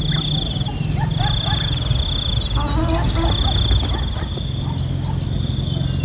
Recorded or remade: recorded